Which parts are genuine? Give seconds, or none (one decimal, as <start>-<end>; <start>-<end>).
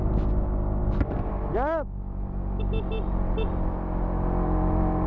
0.0-5.1